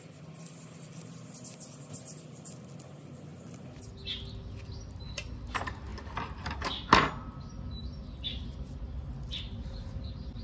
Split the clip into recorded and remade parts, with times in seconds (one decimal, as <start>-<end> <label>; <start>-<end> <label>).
0.0-10.4 recorded